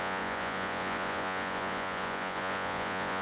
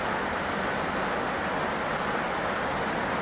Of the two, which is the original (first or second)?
second